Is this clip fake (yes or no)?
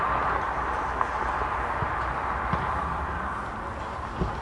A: no